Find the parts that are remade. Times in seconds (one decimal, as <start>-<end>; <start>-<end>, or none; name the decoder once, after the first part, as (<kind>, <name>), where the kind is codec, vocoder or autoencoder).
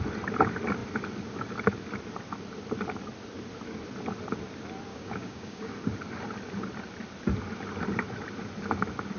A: 4.9-5.7 (codec, DAC)